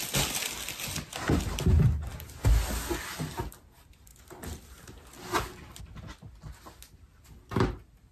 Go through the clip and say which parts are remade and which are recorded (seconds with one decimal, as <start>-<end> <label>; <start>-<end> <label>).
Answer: 0.0-8.1 recorded